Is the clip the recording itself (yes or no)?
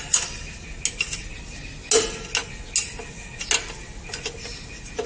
yes